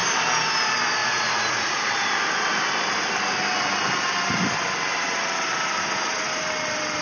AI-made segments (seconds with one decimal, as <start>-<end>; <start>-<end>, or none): 1.0-1.9